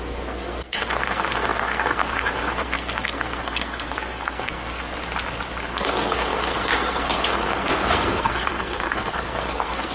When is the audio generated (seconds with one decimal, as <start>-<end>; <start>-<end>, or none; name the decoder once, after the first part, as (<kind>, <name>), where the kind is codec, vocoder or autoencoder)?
0.0-4.8 (codec, SNAC); 5.7-9.9